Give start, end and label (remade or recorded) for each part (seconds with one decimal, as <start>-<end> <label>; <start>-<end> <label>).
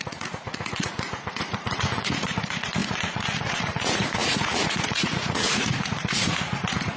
0.0-7.0 remade